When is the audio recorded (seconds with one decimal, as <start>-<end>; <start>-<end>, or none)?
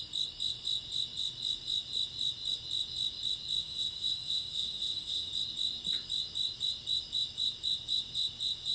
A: 0.0-3.6; 5.3-8.7